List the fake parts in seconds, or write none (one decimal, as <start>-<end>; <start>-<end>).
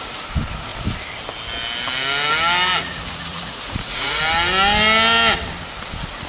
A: 2.8-4.2